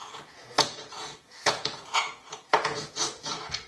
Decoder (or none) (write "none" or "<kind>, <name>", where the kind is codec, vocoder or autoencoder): vocoder, Vocos